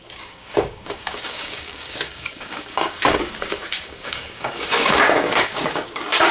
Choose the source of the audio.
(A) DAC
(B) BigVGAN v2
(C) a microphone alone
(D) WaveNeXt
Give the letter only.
A